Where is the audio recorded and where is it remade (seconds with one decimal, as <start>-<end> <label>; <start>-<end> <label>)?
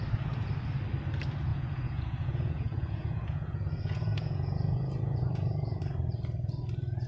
0.0-1.5 recorded; 1.5-5.8 remade; 5.8-7.1 recorded